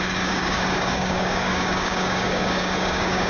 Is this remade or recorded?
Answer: remade